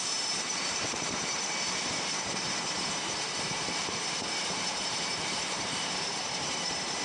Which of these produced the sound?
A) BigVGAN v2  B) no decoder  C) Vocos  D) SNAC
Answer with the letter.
A